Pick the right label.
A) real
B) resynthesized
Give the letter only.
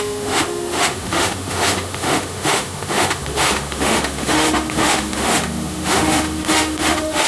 B